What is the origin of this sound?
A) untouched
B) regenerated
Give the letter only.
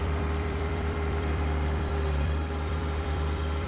B